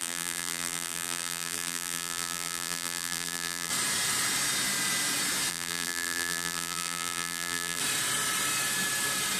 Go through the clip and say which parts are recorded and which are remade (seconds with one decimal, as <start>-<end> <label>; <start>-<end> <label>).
0.0-3.7 remade; 3.7-5.5 recorded; 5.5-7.8 remade; 7.8-9.4 recorded